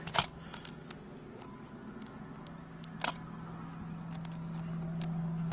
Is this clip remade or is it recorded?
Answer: recorded